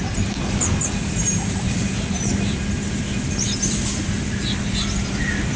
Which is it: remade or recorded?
recorded